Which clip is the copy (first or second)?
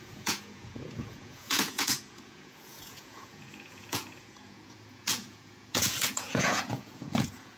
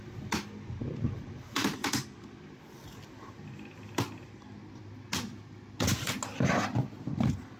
first